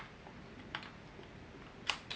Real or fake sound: real